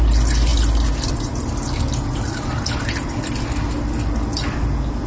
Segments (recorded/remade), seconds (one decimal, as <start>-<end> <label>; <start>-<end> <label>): 0.0-5.1 recorded